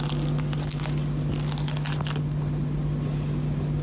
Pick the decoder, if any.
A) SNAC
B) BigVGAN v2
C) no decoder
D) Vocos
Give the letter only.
C